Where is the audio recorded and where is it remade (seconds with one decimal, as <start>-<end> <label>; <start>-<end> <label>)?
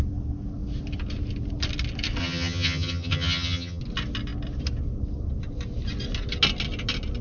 0.0-2.2 recorded; 2.2-3.8 remade; 3.8-7.2 recorded